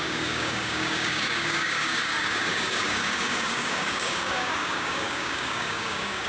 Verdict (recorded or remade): remade